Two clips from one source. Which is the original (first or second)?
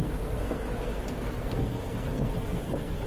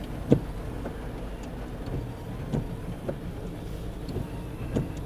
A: second